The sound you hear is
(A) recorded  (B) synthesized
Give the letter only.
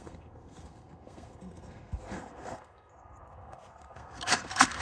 B